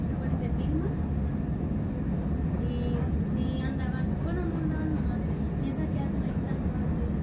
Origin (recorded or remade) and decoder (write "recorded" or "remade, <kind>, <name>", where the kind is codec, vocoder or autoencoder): recorded